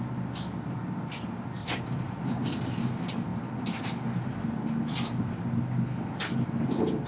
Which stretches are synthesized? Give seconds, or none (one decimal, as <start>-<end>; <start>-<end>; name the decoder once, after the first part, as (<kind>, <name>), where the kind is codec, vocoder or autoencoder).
1.6-2.4 (vocoder, BigVGAN v2)